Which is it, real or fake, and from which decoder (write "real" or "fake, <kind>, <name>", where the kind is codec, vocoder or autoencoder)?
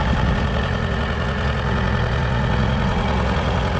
fake, vocoder, Vocos